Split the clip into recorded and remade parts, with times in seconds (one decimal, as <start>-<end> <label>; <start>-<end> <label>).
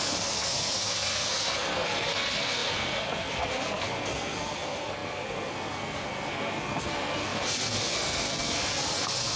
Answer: 0.0-9.4 remade